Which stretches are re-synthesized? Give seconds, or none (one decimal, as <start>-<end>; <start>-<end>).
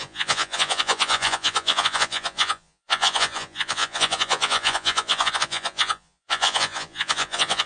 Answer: 0.0-7.7